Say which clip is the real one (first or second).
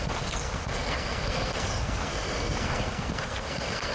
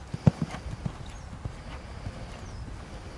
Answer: second